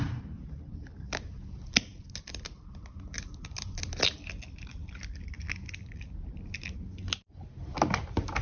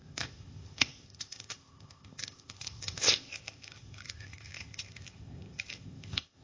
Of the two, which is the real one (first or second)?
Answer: first